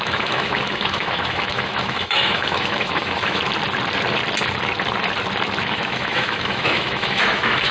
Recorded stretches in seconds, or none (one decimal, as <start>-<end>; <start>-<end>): 3.4-5.6